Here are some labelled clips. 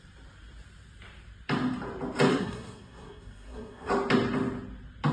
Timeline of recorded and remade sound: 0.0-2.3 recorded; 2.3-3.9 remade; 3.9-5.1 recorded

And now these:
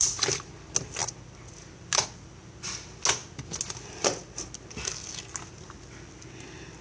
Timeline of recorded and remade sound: 0.0-6.8 recorded

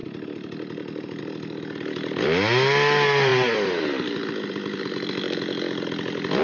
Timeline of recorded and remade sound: 0.0-6.4 recorded